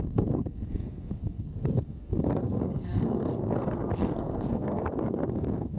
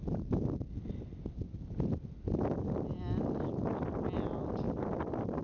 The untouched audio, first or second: second